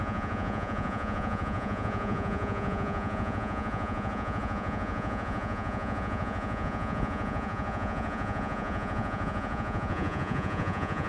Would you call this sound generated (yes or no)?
yes